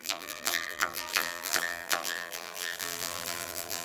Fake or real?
fake